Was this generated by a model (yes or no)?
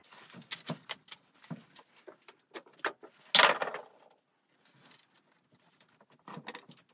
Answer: no